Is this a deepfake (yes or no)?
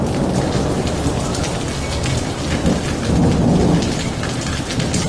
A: no